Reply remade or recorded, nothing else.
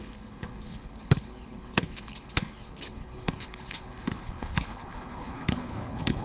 remade